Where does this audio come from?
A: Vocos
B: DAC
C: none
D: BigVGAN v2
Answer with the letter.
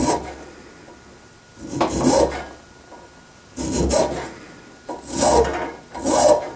C